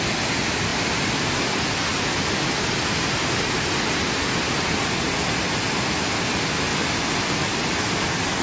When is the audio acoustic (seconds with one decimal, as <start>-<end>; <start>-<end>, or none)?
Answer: 0.0-8.4